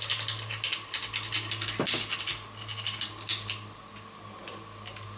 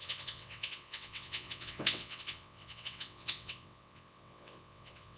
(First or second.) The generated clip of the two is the second